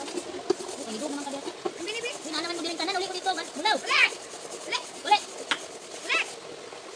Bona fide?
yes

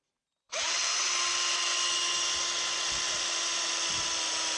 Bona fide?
no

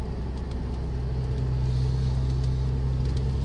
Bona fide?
yes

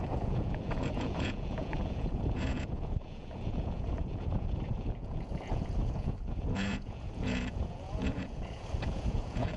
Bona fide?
no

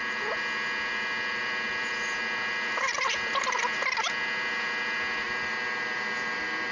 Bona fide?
yes